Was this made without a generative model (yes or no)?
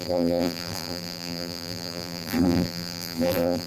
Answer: no